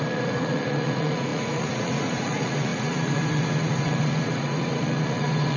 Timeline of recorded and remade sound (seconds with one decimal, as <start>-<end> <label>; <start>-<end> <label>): 0.0-5.6 remade